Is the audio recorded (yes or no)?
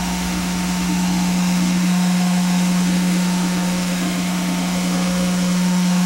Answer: no